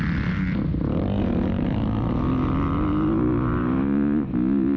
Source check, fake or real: real